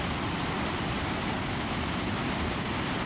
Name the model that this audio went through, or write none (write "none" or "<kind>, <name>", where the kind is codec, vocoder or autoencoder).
none